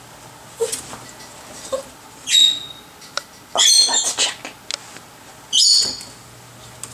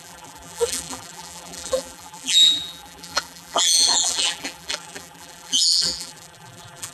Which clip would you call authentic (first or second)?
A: first